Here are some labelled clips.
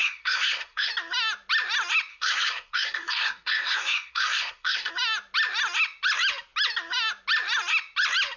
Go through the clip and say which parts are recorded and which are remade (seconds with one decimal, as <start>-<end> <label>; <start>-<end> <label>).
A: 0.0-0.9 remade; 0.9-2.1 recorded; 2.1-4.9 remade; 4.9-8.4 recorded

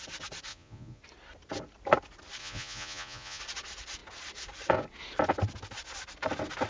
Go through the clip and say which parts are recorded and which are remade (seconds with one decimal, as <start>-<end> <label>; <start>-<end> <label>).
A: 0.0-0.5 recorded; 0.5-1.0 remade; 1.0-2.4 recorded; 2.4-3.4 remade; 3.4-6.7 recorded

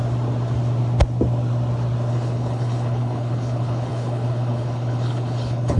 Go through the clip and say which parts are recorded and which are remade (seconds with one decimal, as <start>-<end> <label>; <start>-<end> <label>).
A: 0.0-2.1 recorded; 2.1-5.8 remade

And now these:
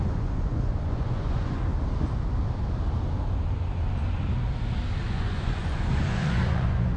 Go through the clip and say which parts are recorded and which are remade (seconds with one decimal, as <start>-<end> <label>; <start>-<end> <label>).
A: 0.0-1.7 remade; 1.7-5.0 recorded; 5.0-7.0 remade